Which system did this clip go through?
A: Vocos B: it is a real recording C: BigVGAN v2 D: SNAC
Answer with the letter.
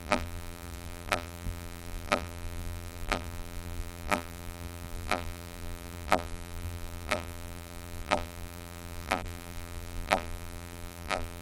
C